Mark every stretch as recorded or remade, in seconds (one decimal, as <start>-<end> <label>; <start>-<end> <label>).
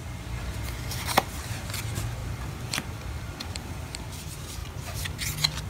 0.0-2.2 recorded; 2.2-3.7 remade; 3.7-5.7 recorded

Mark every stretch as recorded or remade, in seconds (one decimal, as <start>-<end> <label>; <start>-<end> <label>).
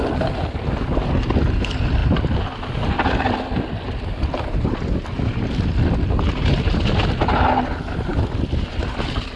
0.0-9.4 recorded